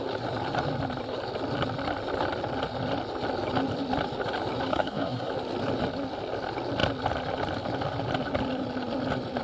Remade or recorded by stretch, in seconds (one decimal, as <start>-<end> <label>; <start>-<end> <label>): 0.0-4.7 recorded; 4.7-5.3 remade; 5.3-9.4 recorded